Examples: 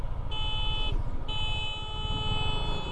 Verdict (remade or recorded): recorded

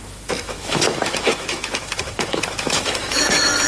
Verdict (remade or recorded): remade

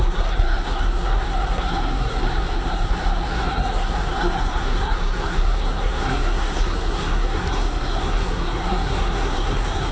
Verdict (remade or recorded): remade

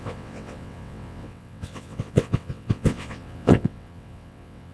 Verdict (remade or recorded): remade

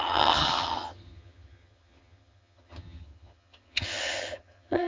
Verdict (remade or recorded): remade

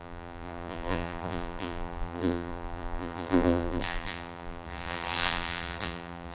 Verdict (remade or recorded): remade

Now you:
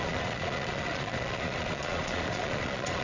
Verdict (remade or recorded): remade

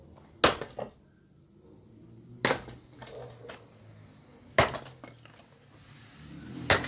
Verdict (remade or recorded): recorded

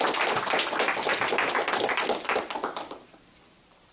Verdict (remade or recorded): recorded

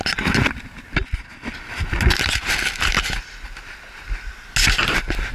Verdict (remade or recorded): recorded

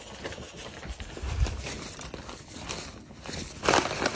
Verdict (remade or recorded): recorded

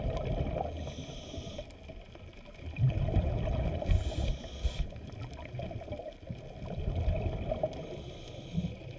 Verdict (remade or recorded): recorded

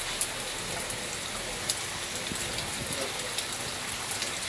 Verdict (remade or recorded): recorded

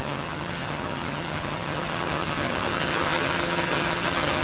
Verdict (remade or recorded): remade